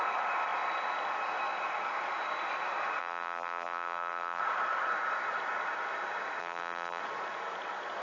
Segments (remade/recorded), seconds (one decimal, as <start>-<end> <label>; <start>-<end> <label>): 0.0-3.0 recorded; 3.0-4.4 remade; 4.4-6.4 recorded; 6.4-7.0 remade; 7.0-8.0 recorded